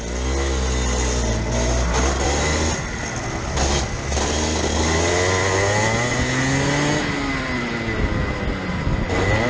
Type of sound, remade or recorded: recorded